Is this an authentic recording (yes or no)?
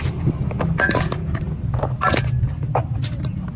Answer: yes